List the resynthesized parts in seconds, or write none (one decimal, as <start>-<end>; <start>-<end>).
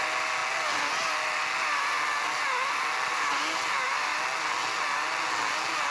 none